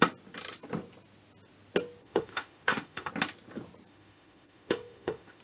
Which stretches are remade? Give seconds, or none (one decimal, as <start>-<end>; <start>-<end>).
2.0-3.1; 3.9-5.4